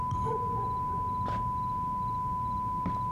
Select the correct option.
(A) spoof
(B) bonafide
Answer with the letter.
B